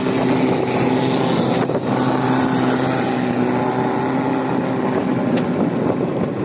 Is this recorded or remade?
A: recorded